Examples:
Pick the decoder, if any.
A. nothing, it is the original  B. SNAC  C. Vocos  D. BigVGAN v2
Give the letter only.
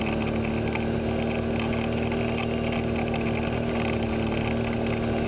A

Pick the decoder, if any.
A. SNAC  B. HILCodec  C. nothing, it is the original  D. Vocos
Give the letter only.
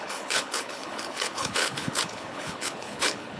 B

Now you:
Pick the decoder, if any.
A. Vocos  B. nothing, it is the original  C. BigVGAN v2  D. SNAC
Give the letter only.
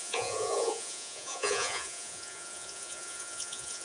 A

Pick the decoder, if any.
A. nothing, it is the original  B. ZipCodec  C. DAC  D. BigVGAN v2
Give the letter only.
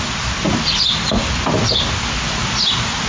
A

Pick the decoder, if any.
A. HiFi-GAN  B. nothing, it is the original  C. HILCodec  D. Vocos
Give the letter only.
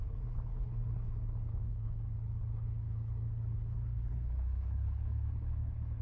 C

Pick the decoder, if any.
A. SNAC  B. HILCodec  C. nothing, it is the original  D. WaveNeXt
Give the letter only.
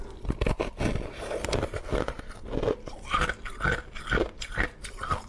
C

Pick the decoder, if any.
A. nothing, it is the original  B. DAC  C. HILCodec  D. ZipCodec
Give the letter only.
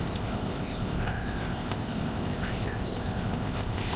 D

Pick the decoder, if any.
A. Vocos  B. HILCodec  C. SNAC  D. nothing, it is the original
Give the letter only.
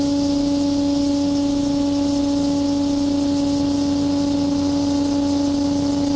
D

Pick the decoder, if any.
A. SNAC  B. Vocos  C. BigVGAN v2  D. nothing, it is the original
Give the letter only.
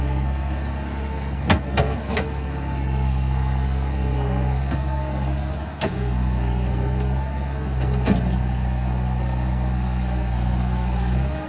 A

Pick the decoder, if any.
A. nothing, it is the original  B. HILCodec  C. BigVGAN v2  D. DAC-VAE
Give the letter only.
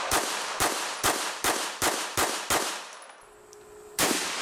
C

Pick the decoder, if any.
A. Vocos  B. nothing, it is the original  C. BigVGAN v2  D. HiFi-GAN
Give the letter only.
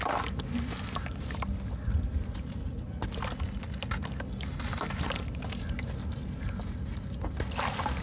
B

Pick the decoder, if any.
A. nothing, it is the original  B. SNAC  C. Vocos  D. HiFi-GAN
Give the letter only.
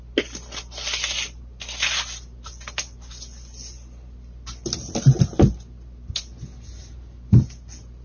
A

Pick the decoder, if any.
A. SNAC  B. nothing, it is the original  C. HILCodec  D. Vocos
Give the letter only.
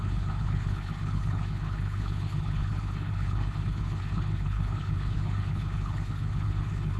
C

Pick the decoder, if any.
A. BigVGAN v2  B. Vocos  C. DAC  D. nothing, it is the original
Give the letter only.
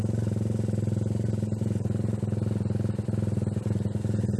D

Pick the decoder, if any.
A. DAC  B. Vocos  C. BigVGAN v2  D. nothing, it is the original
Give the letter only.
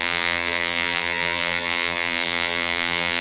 C